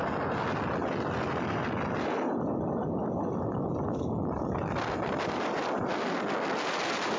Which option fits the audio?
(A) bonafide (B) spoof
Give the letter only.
A